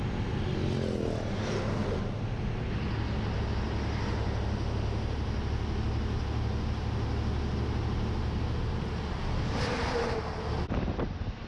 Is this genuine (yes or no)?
yes